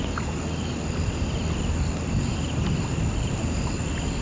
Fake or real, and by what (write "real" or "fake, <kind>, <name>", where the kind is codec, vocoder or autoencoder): real